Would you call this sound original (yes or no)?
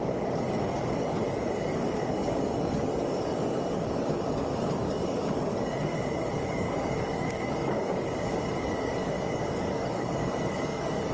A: no